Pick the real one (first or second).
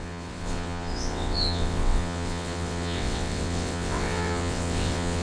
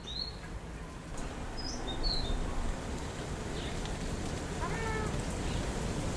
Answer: second